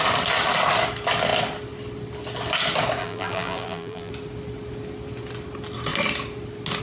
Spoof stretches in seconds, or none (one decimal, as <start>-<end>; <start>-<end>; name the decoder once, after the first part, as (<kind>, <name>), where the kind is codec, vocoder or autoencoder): 3.0-4.1 (vocoder, BigVGAN v2)